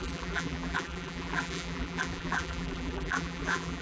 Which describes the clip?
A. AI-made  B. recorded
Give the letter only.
A